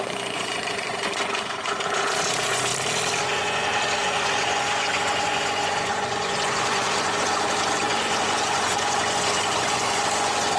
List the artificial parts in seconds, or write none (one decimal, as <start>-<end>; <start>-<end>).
0.0-2.7; 3.2-10.6